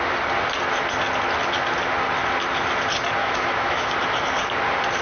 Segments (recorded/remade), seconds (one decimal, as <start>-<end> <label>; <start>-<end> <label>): 0.0-3.2 recorded; 3.2-3.9 remade; 3.9-5.0 recorded